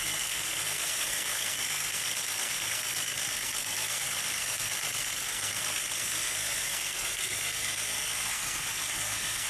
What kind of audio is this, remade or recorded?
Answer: remade